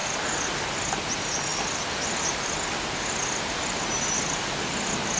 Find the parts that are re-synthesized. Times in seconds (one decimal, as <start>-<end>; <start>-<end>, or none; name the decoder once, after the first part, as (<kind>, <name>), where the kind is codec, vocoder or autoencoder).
none